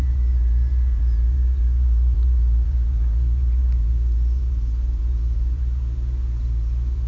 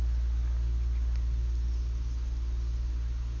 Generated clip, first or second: first